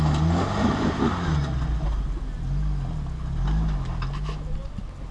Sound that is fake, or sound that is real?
real